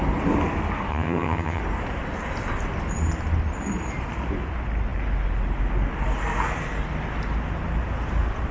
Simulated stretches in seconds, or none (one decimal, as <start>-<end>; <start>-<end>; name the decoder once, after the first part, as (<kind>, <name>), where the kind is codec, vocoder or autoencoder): 0.9-1.6 (vocoder, HiFi-GAN)